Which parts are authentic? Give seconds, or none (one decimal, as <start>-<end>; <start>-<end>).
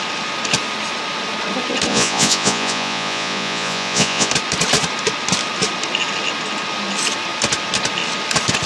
0.0-1.9; 4.3-8.7